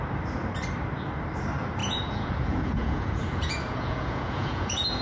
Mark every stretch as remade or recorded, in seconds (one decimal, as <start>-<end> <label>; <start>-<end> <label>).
0.0-1.8 recorded; 1.8-5.0 remade